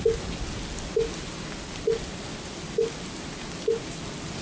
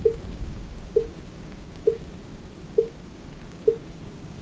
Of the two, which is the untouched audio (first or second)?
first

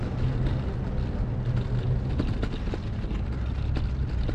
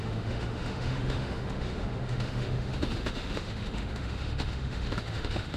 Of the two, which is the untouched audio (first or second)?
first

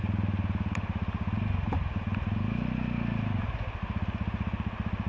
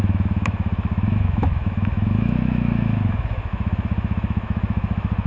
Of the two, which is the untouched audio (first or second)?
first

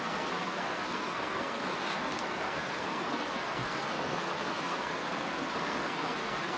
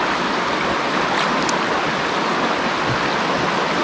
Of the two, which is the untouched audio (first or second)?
second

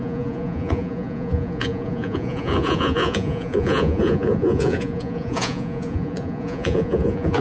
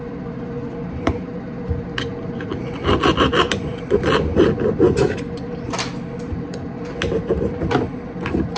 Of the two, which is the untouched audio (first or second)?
second